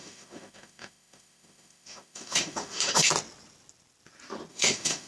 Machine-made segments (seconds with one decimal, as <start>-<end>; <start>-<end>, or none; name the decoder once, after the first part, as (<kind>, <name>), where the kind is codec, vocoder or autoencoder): 0.0-3.1 (autoencoder, DAC-VAE); 4.5-5.1